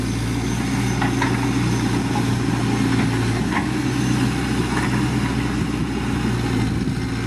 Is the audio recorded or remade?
recorded